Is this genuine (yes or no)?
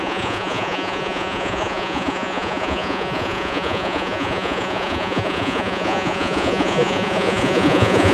no